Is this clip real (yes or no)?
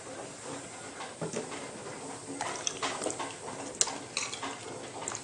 yes